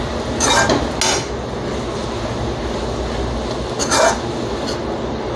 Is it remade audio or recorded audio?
recorded